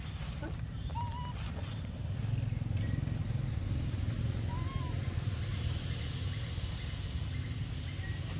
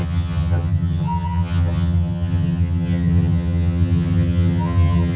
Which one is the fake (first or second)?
second